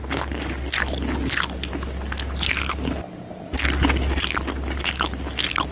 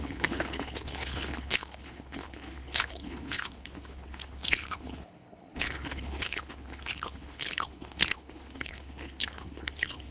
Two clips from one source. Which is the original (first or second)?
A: first